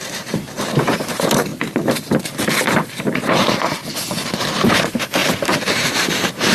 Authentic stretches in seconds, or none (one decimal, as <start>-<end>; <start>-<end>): 1.5-2.6; 3.8-4.4